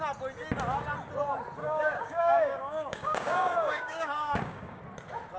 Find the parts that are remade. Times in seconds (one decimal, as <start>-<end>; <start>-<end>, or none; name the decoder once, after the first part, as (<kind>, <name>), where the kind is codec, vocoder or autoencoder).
1.6-4.8 (codec, DAC)